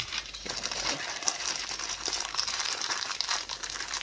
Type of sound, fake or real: fake